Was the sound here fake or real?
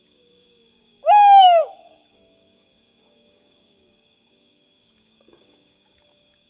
fake